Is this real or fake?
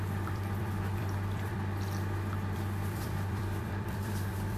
fake